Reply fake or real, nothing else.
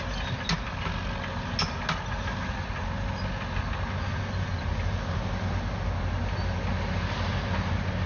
real